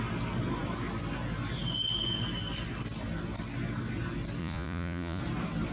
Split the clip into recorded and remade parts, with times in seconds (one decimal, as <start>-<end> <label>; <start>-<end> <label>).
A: 0.0-4.4 recorded; 4.4-5.2 remade; 5.2-5.7 recorded